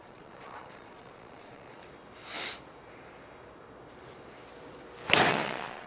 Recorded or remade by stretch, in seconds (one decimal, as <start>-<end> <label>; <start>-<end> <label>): 0.0-1.8 remade; 1.8-5.3 recorded; 5.3-5.9 remade